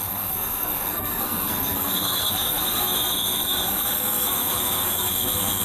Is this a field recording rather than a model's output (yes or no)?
no